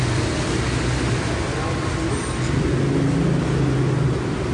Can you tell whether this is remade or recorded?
recorded